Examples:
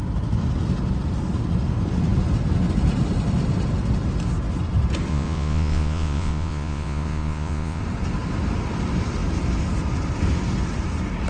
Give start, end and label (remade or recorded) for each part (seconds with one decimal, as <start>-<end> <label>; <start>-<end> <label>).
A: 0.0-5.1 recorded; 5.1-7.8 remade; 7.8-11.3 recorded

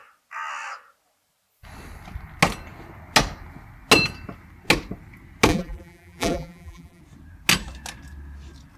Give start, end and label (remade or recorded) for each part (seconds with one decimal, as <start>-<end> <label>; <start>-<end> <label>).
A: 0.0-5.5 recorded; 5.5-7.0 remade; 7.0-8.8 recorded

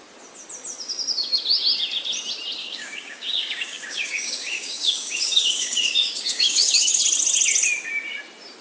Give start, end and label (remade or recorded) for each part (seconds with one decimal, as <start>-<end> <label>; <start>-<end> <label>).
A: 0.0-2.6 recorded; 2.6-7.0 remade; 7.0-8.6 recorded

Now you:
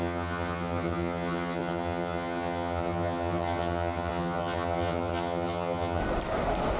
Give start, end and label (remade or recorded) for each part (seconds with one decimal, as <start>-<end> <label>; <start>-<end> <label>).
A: 0.0-6.0 remade; 6.0-6.8 recorded

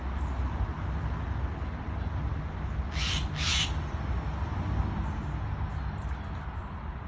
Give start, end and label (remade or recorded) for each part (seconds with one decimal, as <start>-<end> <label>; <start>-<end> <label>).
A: 0.0-7.1 recorded

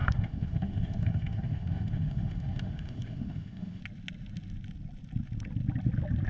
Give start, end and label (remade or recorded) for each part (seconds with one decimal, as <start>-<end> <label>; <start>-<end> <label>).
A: 0.0-3.8 remade; 3.8-6.3 recorded

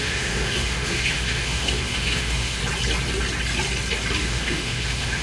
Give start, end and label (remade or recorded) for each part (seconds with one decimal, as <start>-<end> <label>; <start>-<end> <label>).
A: 0.0-2.6 remade; 2.6-4.2 recorded; 4.2-5.2 remade